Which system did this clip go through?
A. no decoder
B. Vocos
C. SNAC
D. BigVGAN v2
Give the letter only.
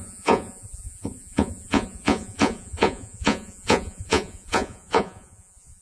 B